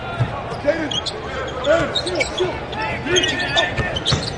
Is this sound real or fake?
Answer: real